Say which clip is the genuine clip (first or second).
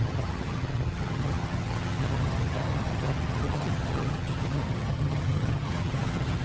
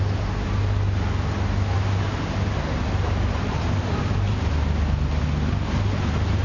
second